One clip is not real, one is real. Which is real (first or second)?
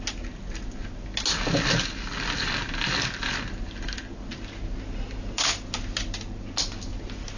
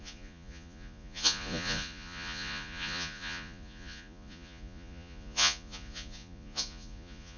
first